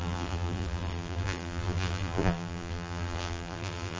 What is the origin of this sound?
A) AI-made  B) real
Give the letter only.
A